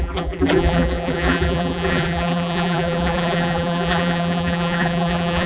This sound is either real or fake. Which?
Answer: fake